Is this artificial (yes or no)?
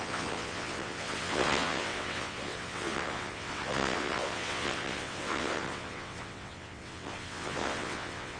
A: yes